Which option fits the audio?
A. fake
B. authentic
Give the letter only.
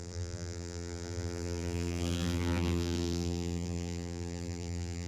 A